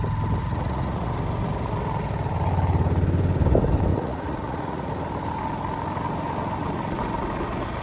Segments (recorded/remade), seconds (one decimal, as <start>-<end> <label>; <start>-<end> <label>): 0.0-0.4 recorded; 0.4-1.1 remade; 1.1-3.9 recorded; 3.9-4.9 remade; 4.9-7.8 recorded